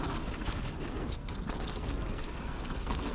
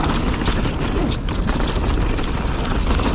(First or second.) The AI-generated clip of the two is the first